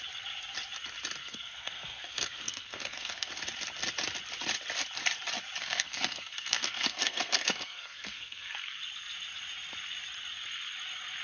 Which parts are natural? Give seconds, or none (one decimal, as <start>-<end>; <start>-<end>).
0.0-1.2; 3.3-5.6; 8.8-11.2